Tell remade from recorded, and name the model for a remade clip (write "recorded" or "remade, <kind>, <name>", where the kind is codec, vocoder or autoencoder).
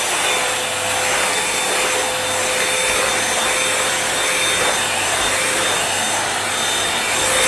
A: recorded